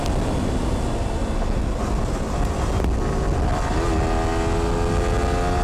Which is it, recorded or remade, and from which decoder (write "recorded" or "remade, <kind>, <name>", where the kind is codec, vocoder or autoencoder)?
recorded